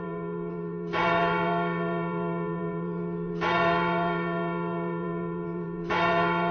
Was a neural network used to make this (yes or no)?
yes